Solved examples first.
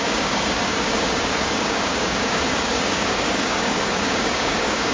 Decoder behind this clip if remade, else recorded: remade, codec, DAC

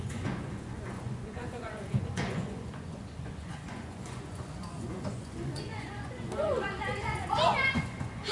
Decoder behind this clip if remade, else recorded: remade, vocoder, Vocos